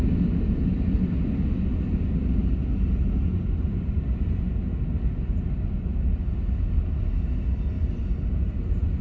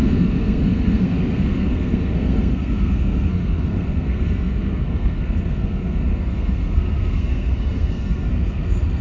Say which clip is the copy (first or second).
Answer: second